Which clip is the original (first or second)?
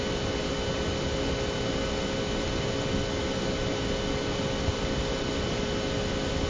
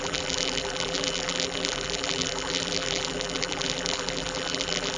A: first